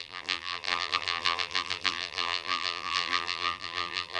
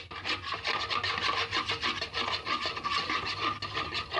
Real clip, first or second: second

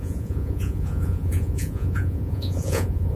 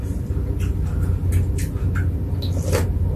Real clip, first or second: second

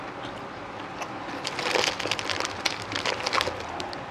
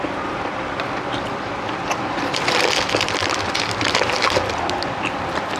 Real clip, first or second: first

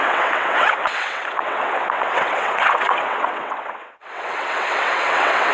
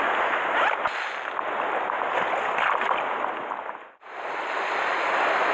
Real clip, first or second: second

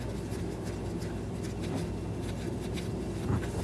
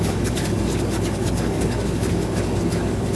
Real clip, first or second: first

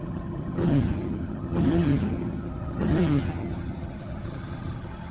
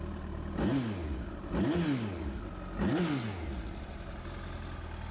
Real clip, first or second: second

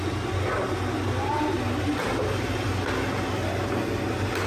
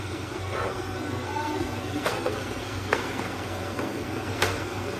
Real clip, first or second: first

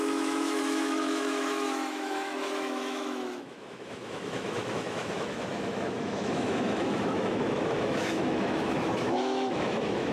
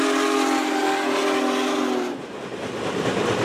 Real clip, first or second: second